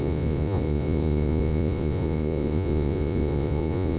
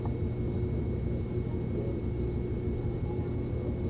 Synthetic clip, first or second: first